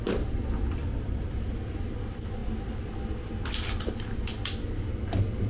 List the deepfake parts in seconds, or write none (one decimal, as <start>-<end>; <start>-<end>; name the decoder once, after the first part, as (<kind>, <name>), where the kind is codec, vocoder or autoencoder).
0.8-1.8 (vocoder, BigVGAN v2)

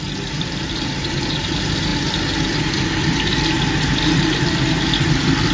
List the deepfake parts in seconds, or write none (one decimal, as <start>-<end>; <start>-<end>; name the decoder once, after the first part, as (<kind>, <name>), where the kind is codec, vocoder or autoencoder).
0.0-5.5 (vocoder, BigVGAN v2)

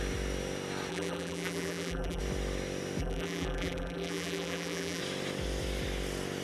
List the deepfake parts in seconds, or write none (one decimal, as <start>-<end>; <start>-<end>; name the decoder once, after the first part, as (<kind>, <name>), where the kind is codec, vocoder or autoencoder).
0.9-2.2 (vocoder, BigVGAN v2); 3.0-5.0

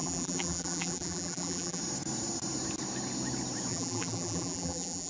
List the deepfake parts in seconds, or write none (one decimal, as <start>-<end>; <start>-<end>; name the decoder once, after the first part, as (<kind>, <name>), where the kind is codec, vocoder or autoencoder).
0.0-1.8 (vocoder, BigVGAN v2); 3.7-5.1